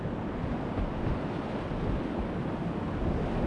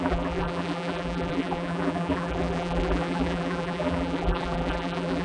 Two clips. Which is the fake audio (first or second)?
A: second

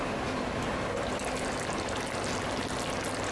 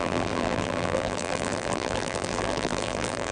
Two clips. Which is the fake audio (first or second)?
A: second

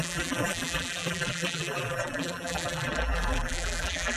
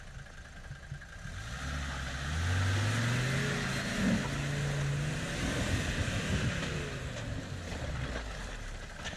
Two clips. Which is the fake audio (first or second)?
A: first